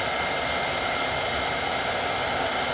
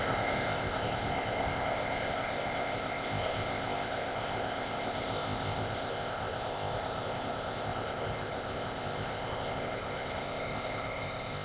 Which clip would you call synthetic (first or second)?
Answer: second